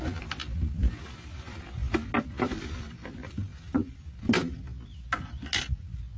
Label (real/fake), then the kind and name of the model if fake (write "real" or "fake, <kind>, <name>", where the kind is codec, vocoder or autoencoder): real